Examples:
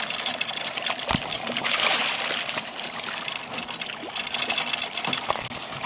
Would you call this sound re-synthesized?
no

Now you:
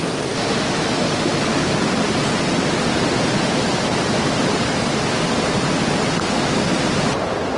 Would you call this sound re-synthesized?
no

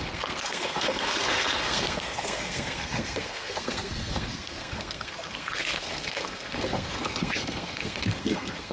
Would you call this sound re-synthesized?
yes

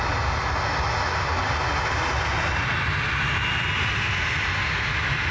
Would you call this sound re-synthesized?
no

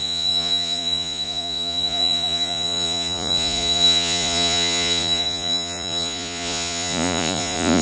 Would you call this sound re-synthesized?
yes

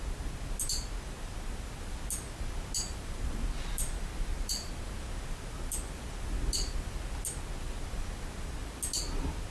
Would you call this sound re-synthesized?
no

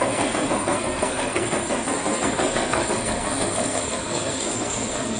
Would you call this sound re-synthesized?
yes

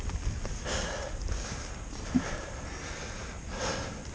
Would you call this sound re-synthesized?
no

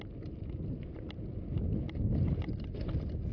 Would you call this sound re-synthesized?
no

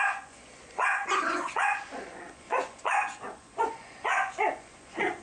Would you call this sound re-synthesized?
yes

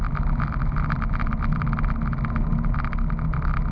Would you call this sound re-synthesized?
no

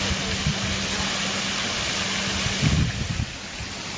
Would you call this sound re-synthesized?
no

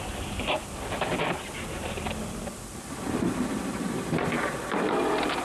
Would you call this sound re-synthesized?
no